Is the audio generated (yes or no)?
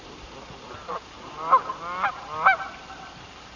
no